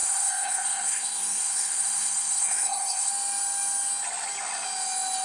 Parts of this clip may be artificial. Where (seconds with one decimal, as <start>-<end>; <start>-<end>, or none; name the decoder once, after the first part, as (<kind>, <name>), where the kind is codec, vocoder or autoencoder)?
0.0-3.1 (codec, SNAC)